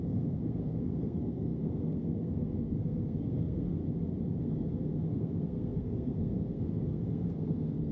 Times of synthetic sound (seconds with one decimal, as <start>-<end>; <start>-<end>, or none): 0.0-3.8; 4.4-7.9